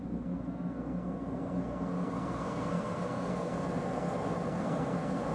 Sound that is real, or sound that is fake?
fake